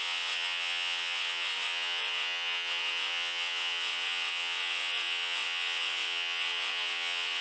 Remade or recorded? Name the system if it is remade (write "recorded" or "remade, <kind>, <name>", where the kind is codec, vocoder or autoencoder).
remade, vocoder, WaveNeXt